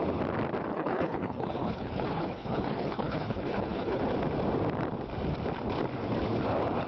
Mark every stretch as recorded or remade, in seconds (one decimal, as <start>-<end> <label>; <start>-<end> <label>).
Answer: 0.0-0.7 recorded; 0.7-4.0 remade; 4.0-6.9 recorded